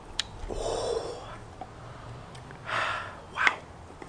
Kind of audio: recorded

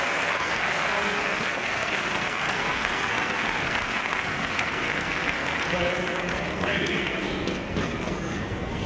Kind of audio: remade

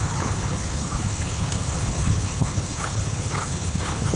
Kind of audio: remade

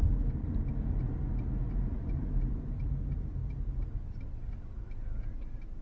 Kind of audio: recorded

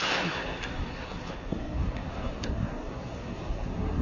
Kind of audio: remade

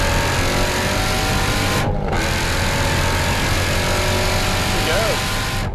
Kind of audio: recorded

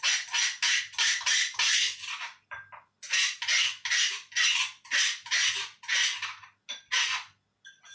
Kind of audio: recorded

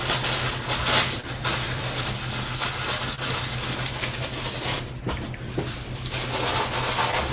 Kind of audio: recorded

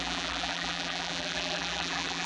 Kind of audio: remade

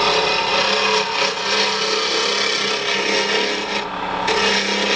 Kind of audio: recorded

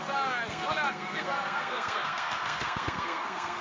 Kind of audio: remade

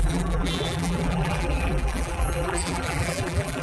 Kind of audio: remade